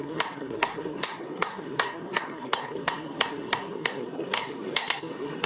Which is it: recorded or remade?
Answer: remade